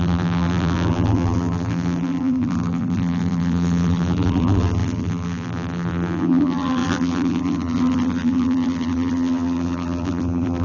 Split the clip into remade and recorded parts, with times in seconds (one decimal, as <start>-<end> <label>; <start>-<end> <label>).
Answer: 0.0-10.6 remade